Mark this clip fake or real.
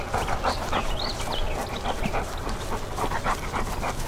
real